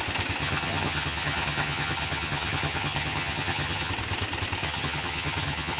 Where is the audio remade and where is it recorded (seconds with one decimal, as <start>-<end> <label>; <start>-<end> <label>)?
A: 0.0-0.4 recorded; 0.4-3.9 remade; 3.9-4.6 recorded; 4.6-5.8 remade